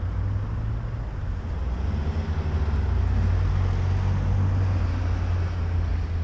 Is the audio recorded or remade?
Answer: recorded